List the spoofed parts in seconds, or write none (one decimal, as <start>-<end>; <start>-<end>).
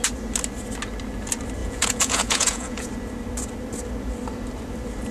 1.6-2.9